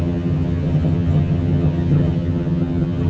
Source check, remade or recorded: remade